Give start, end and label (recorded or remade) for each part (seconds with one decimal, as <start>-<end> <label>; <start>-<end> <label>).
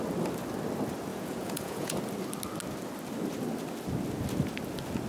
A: 0.0-1.1 recorded; 1.1-2.0 remade; 2.0-5.1 recorded